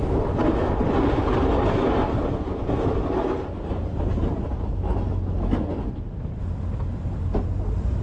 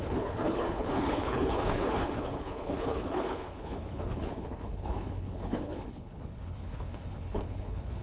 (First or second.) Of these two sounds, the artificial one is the second